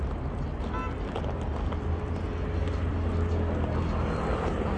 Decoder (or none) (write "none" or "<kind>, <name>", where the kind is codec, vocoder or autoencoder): none